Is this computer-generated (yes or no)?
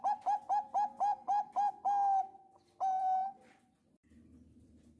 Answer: no